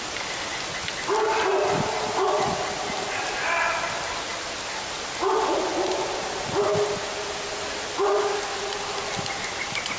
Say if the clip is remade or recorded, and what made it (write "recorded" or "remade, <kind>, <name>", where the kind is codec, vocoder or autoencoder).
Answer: recorded